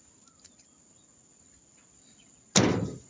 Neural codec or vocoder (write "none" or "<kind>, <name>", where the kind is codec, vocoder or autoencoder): none